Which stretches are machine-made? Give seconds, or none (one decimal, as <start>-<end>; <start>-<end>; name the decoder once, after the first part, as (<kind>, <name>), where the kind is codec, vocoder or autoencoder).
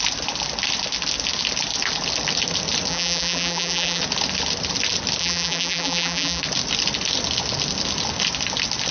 2.9-4.0 (vocoder, BigVGAN v2); 5.2-6.4